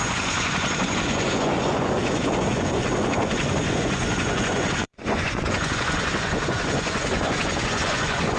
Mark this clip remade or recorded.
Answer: remade